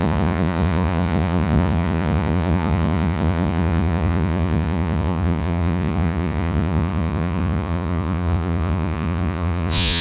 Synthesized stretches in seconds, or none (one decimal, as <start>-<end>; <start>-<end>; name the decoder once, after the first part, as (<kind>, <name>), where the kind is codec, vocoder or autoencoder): 0.0-10.0 (vocoder, Vocos)